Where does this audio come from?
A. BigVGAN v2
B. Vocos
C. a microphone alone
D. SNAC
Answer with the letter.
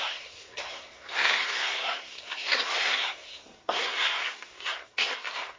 D